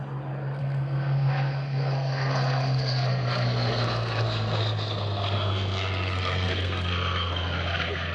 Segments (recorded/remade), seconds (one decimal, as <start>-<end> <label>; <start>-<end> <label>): 0.0-0.6 recorded; 0.6-8.1 remade